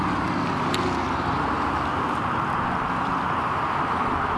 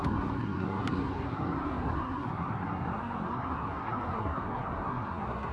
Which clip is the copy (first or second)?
second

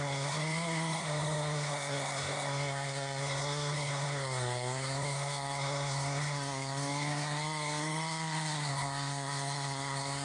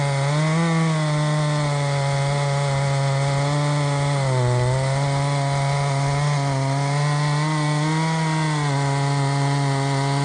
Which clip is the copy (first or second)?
first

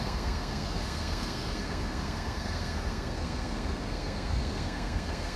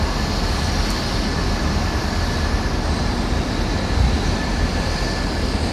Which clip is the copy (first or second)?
first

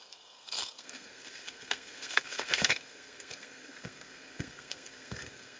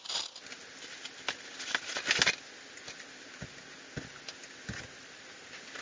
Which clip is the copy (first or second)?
first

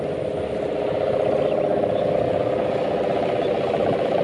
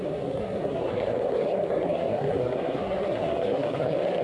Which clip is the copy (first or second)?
second